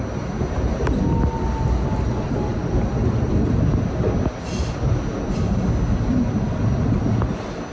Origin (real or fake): real